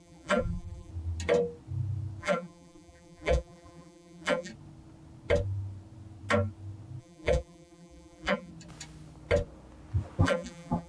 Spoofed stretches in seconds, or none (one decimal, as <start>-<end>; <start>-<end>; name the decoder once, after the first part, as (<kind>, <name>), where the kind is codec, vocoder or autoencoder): 0.0-0.9 (vocoder, BigVGAN v2); 2.2-4.5; 7.0-8.5; 10.2-10.9